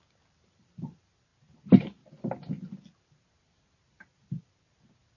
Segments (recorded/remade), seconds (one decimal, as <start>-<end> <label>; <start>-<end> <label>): 0.0-5.2 recorded